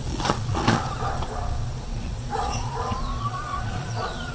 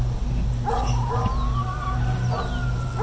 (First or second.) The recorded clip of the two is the second